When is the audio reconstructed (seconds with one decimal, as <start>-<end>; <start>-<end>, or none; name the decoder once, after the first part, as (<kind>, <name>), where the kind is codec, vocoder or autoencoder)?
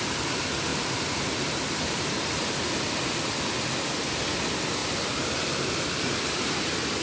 none